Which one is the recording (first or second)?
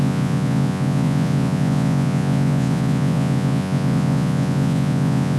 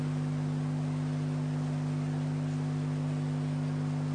second